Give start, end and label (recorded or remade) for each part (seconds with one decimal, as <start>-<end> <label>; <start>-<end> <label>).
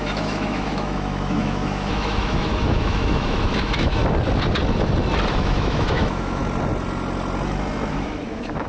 0.0-4.0 remade; 4.0-5.3 recorded; 5.3-6.4 remade; 6.4-7.9 recorded; 7.9-8.7 remade